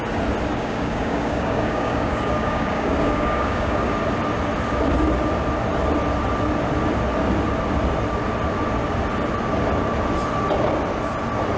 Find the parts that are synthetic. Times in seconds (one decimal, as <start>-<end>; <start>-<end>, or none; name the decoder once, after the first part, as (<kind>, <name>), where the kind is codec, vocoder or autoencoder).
0.5-3.9 (codec, DAC)